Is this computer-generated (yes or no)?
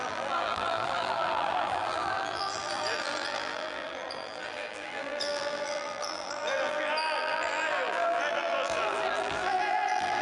yes